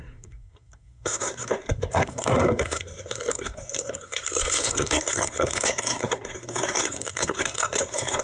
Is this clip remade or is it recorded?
remade